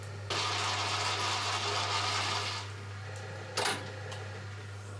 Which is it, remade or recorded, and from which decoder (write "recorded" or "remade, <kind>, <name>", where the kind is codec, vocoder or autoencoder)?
recorded